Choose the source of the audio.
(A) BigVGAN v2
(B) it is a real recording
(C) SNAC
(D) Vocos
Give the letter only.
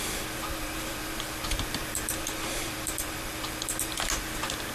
A